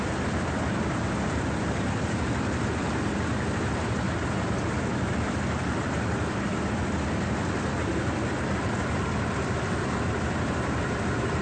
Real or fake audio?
real